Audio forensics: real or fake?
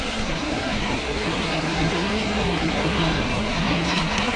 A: fake